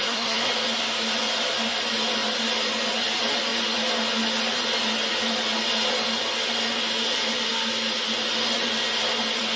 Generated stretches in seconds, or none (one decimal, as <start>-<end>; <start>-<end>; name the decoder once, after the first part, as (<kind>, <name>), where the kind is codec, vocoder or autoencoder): 0.0-0.5 (codec, SNAC)